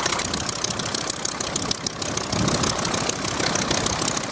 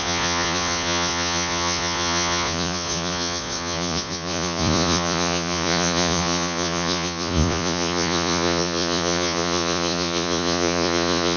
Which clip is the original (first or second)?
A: first